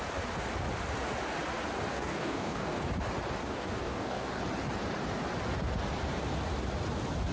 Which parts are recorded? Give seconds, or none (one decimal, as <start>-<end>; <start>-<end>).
0.0-1.9; 2.8-3.4; 4.4-7.3